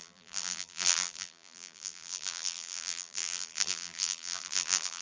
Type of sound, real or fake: fake